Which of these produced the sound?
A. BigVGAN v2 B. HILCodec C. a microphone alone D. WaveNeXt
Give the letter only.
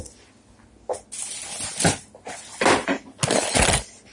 C